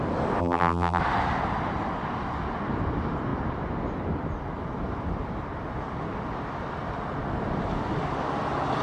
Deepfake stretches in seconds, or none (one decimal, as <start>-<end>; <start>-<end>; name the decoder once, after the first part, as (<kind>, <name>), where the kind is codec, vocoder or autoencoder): 0.4-1.0 (vocoder, BigVGAN v2)